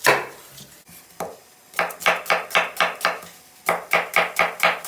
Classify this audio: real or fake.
real